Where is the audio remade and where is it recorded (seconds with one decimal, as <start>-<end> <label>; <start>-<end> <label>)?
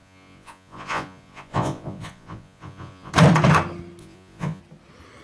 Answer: 0.0-3.1 remade; 3.1-4.0 recorded; 4.0-4.6 remade; 4.6-5.2 recorded